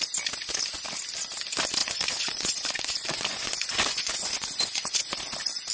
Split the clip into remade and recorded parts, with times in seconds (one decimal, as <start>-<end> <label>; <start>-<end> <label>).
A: 0.0-1.8 recorded; 1.8-5.2 remade; 5.2-5.7 recorded